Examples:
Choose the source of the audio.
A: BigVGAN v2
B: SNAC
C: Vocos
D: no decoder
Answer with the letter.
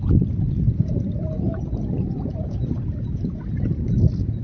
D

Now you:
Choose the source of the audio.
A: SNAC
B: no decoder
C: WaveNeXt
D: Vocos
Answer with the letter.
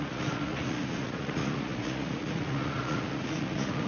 D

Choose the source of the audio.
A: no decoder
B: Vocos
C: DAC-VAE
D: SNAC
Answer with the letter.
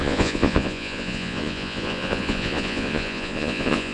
B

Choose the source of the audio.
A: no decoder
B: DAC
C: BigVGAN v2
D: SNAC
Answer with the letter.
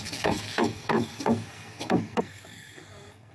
D